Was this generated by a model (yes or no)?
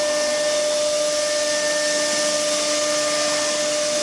no